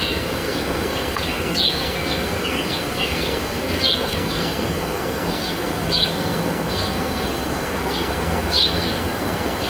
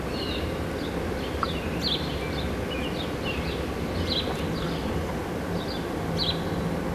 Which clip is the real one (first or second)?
second